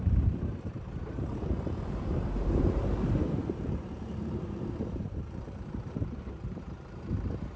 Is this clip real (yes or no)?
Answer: no